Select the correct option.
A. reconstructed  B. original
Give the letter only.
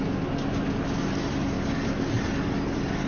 B